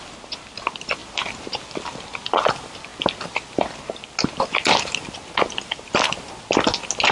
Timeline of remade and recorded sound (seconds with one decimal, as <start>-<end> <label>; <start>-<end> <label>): 0.0-7.1 recorded